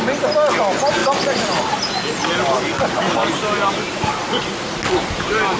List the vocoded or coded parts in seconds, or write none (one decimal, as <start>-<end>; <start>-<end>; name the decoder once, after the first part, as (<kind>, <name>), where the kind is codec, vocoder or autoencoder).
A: none